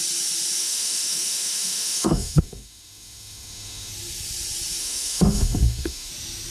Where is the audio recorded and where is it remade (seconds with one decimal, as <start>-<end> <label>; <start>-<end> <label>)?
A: 0.0-0.6 recorded; 0.6-3.9 remade; 3.9-4.8 recorded; 4.8-6.1 remade; 6.1-6.5 recorded